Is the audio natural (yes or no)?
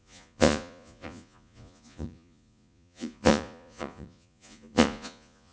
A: no